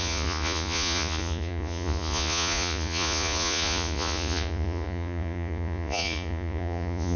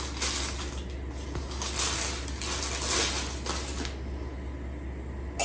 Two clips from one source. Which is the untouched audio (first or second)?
second